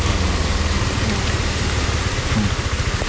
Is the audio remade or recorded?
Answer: recorded